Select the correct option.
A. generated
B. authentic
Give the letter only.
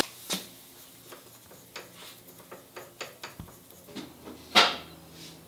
B